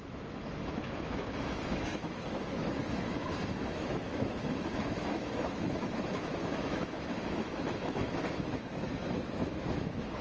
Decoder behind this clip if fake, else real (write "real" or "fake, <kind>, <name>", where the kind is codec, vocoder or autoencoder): fake, autoencoder, DAC-VAE